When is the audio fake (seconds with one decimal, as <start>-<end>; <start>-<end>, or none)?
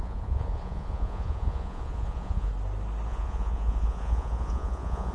0.0-2.5; 3.1-5.1